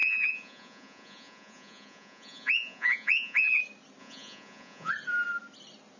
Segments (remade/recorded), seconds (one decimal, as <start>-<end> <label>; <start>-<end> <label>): 0.0-3.6 remade; 3.6-4.0 recorded; 4.0-4.9 remade; 4.9-6.0 recorded